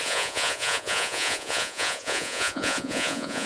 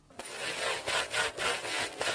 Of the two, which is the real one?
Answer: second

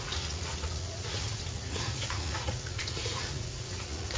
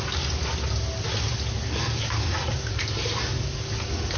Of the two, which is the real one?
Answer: second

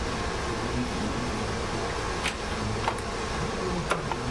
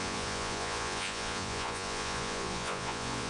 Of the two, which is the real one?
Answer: first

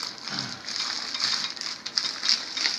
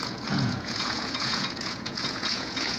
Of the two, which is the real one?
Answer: first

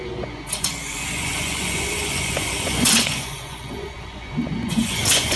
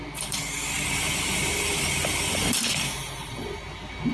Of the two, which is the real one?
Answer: second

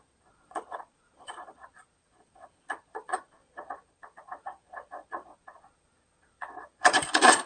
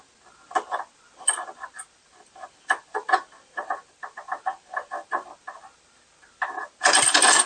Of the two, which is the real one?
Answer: second